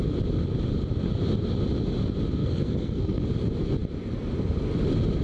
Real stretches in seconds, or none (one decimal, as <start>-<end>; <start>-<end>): 0.0-2.4; 3.2-5.2